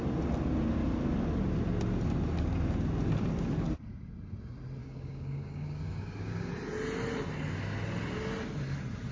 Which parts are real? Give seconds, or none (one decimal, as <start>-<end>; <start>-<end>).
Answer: 0.0-4.8; 6.5-9.1